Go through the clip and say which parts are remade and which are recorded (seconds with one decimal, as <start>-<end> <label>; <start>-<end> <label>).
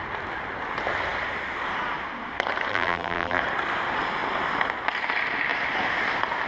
0.0-2.7 recorded; 2.7-3.4 remade; 3.4-6.5 recorded